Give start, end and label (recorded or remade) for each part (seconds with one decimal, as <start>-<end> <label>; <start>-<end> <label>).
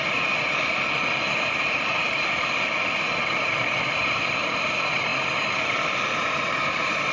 0.0-7.1 remade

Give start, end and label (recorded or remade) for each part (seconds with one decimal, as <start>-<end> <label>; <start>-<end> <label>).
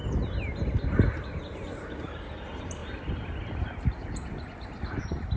0.0-1.4 recorded; 1.4-5.4 remade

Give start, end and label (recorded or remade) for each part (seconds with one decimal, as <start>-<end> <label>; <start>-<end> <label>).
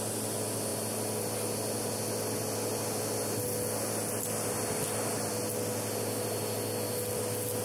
0.0-7.6 recorded